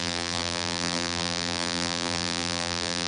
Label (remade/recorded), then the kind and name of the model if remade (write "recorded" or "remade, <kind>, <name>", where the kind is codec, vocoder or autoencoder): remade, vocoder, BigVGAN v2